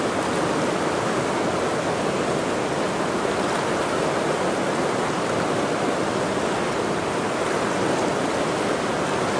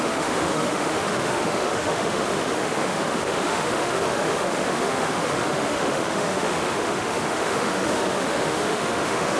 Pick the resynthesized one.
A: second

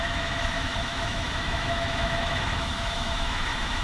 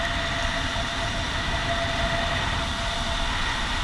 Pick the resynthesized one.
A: first